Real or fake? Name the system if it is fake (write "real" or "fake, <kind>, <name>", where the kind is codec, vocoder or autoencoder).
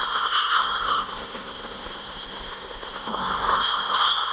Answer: fake, codec, SNAC